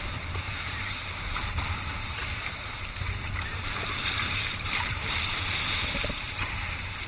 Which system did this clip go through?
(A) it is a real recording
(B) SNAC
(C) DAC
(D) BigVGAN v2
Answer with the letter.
D